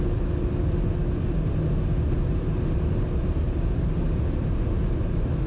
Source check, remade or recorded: recorded